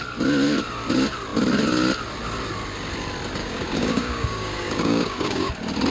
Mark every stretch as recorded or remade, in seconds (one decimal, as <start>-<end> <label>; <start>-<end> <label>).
0.0-3.4 recorded; 3.4-5.5 remade; 5.5-5.9 recorded